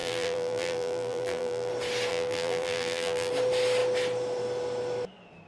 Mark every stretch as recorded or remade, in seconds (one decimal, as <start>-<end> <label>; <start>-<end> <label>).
0.0-1.7 remade; 1.7-2.1 recorded; 2.1-3.3 remade; 3.3-5.5 recorded

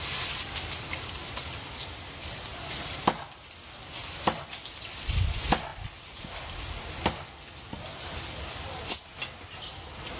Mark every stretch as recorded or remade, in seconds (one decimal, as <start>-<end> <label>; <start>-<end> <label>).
0.0-10.2 recorded

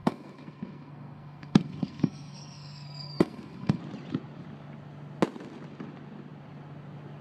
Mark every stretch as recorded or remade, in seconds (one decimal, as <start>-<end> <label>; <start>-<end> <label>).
0.0-3.8 remade; 3.8-7.2 recorded

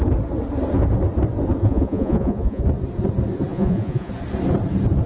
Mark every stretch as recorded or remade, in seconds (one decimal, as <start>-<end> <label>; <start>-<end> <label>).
0.0-1.6 recorded; 1.6-2.6 remade; 2.6-3.5 recorded; 3.5-4.1 remade; 4.1-5.1 recorded